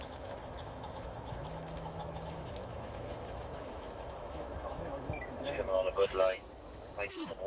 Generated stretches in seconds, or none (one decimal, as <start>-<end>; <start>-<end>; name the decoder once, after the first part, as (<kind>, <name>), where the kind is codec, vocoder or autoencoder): 0.0-6.1 (autoencoder, DAC-VAE); 7.1-7.5